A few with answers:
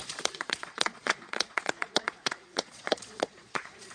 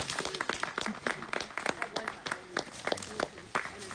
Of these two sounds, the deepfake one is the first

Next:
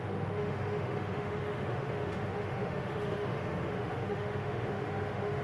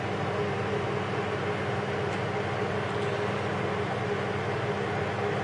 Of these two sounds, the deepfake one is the first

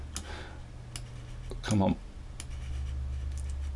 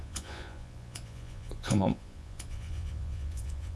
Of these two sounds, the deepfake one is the second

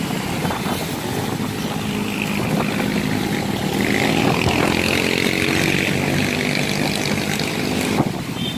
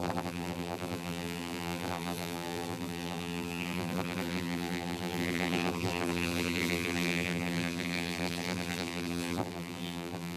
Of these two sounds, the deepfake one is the second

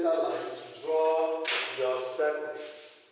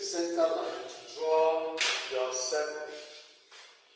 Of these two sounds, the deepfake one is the second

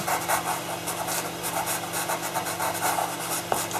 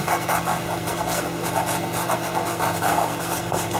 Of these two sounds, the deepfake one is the second